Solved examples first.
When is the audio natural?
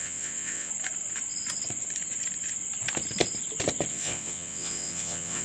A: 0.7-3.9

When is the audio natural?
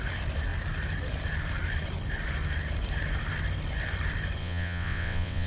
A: 0.0-4.4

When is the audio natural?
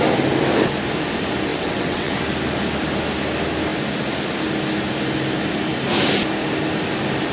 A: 0.0-1.5; 2.1-7.3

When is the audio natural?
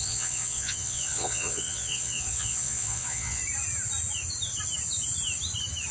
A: 3.4-5.9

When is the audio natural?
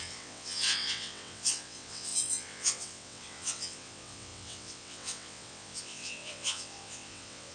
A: none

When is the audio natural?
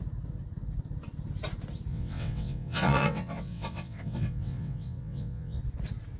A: 0.0-1.9; 5.6-6.2